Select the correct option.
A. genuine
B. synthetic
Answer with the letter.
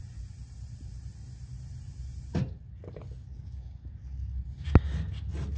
A